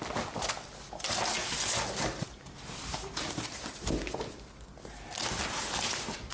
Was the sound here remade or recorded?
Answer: recorded